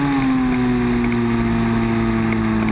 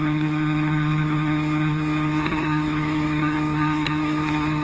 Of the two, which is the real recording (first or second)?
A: first